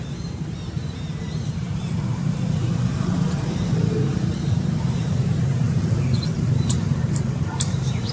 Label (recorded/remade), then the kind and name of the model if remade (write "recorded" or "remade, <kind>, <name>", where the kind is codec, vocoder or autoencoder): remade, vocoder, BigVGAN v2